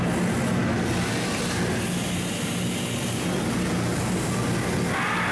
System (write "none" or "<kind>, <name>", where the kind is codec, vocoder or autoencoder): none